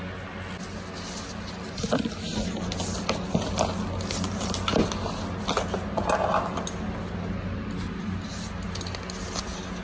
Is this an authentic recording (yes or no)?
yes